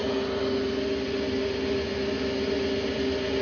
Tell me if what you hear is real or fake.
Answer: real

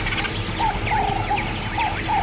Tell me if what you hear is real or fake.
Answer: real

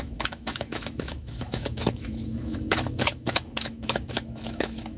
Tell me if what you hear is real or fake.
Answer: fake